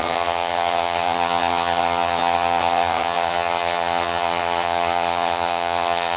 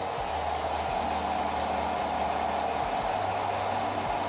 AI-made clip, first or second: first